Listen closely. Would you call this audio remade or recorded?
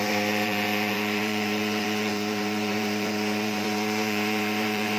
remade